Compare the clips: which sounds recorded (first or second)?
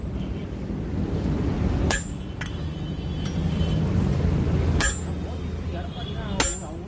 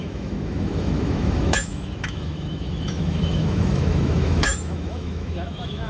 first